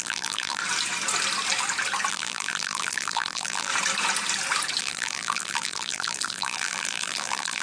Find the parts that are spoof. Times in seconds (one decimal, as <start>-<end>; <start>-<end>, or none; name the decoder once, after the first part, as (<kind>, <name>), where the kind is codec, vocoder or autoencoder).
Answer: 0.0-0.6 (vocoder, BigVGAN v2); 2.1-3.7; 4.8-7.6